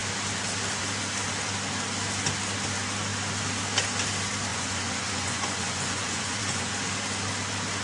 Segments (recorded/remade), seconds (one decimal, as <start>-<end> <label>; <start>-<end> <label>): 0.0-4.5 recorded; 4.5-6.7 remade; 6.7-7.8 recorded